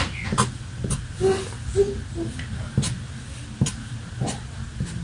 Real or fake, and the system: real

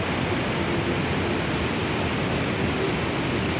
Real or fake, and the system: real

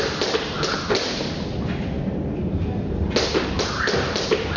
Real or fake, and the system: real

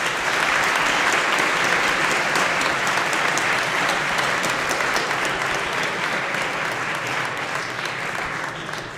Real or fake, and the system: real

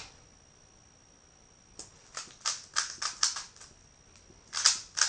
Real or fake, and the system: real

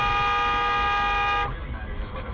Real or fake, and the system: real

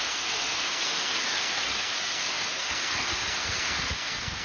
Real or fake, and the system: fake, codec, SNAC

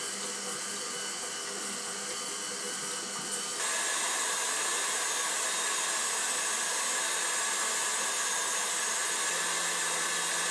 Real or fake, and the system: real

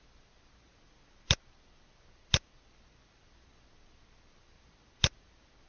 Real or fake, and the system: real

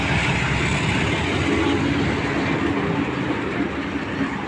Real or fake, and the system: real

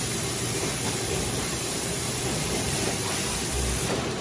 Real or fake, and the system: fake, vocoder, BigVGAN v2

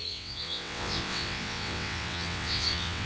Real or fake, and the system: fake, vocoder, WaveNeXt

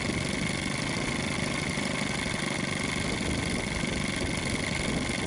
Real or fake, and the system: real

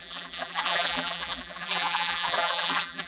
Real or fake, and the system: fake, vocoder, BigVGAN v2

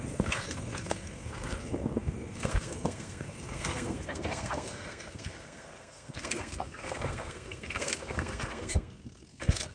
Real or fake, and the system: fake, codec, SNAC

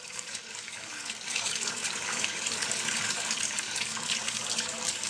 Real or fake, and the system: fake, codec, DAC